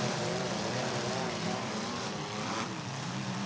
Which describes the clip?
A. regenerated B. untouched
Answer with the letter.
A